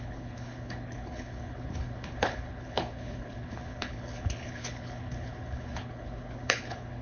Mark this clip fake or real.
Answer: fake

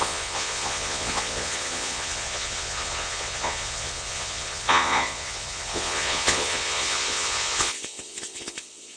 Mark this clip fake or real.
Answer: fake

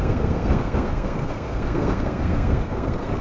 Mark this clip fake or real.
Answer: fake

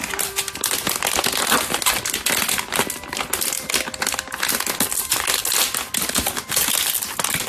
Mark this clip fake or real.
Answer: real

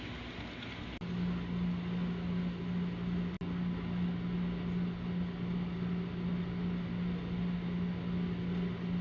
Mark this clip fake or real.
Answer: real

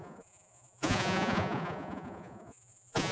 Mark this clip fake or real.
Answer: fake